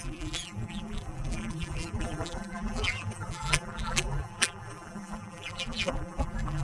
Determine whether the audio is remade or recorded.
remade